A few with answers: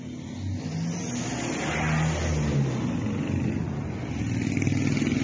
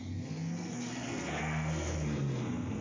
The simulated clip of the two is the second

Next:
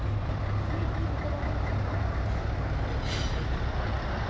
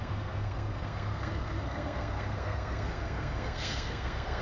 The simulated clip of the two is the second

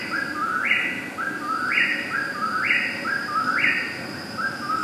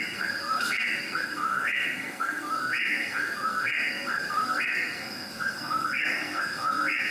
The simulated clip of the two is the second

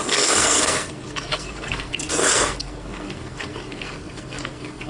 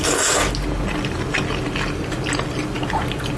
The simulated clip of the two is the first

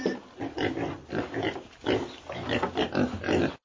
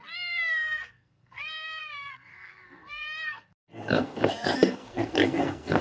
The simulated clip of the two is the second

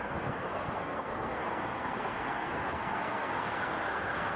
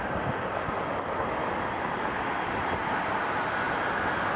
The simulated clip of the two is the first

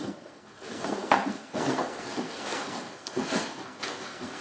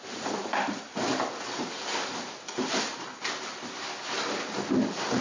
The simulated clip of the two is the first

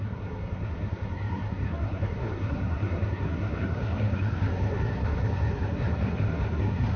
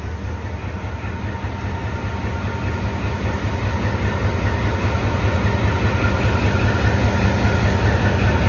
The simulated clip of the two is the first